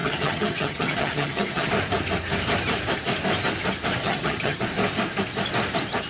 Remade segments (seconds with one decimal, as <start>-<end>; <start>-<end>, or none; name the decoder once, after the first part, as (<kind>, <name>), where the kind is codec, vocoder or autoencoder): 0.0-1.7 (vocoder, HiFi-GAN); 4.0-4.6